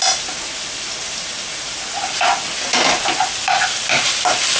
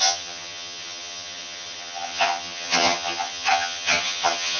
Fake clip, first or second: second